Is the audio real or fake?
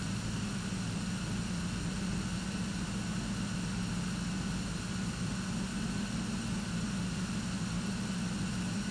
real